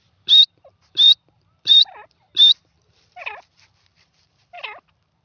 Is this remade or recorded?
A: remade